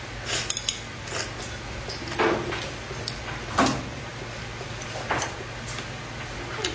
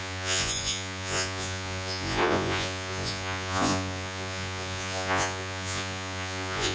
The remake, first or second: second